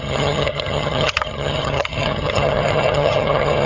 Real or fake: fake